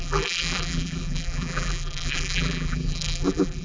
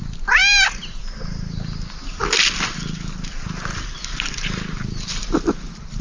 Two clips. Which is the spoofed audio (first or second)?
first